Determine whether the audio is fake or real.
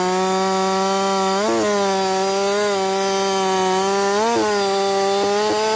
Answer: real